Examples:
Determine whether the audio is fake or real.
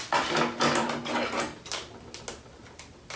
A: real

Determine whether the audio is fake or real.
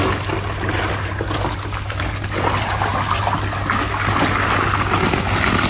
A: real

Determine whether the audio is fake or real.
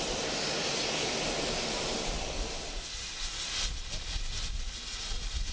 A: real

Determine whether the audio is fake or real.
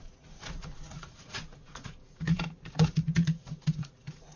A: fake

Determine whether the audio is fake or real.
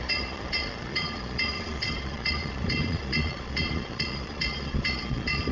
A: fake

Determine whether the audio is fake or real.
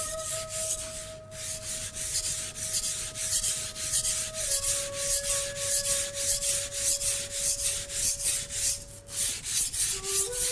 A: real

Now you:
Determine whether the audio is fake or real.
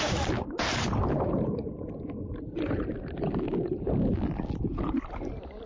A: real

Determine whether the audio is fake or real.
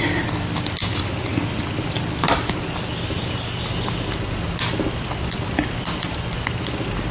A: real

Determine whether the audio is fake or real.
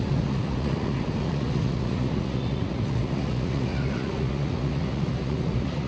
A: fake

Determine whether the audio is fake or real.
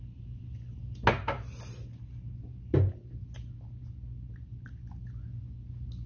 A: real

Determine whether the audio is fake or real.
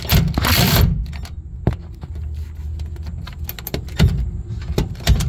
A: real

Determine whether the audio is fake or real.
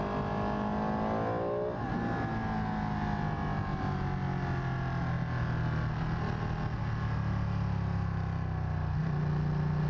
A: real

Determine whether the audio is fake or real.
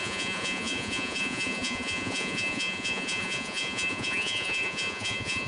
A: fake